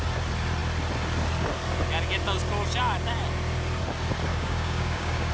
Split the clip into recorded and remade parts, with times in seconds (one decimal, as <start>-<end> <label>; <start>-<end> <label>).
0.0-4.3 recorded; 4.3-5.3 remade